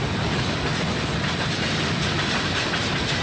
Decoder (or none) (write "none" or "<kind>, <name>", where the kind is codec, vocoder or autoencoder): none